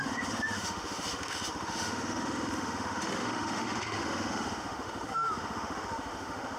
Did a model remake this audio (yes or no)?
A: yes